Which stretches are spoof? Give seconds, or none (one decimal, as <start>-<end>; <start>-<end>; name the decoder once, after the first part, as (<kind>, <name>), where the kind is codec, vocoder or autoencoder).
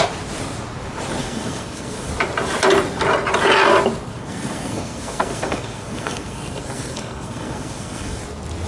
1.2-2.1 (codec, SNAC); 4.1-8.2